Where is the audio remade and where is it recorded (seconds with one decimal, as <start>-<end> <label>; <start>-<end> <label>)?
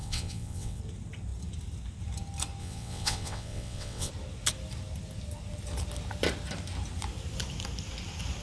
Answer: 0.0-0.8 remade; 0.8-2.6 recorded; 2.6-4.1 remade; 4.1-8.4 recorded